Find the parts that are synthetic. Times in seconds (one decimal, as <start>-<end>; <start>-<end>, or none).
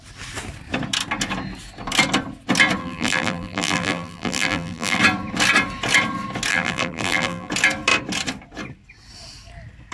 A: 2.8-5.0; 6.5-7.5